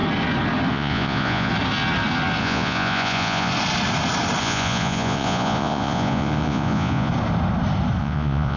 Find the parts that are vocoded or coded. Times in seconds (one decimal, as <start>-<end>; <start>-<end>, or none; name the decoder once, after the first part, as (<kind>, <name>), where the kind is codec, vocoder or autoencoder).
0.7-1.5 (vocoder, Vocos); 2.4-3.5; 4.4-7.1; 8.0-8.6